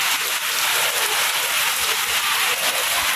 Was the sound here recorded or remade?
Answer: recorded